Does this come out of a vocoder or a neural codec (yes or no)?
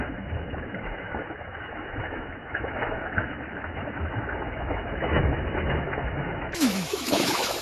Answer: yes